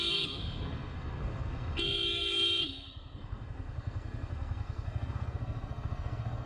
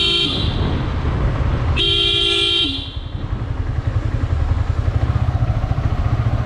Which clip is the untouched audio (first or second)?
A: second